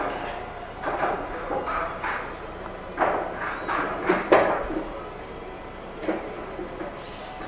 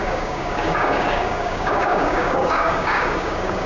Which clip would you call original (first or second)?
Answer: first